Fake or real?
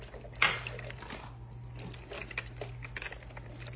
real